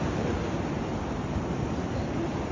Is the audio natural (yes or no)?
yes